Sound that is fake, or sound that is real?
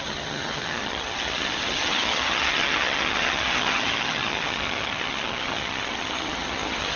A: fake